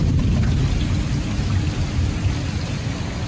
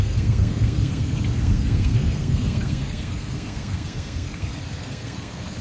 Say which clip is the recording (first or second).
first